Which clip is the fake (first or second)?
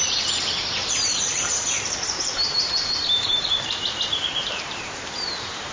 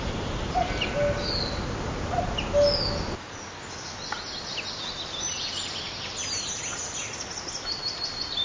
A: first